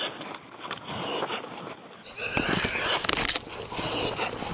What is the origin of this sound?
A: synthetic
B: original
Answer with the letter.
B